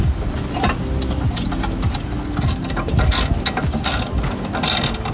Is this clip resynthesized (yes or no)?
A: no